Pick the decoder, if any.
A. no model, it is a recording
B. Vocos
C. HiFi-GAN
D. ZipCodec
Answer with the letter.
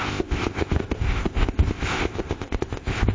D